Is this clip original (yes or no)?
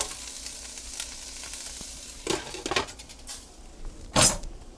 yes